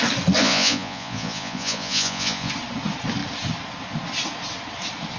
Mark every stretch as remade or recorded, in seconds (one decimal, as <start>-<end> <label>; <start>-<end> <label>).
0.0-0.4 recorded; 0.4-2.5 remade; 2.5-5.2 recorded